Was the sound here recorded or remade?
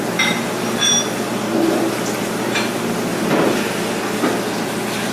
recorded